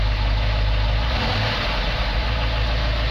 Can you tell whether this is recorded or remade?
recorded